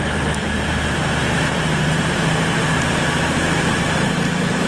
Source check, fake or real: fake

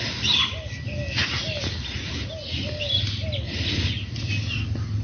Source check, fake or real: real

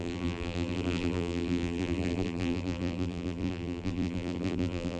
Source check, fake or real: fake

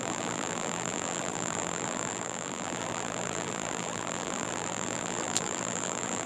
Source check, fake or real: fake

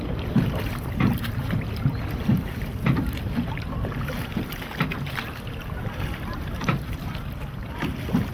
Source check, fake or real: fake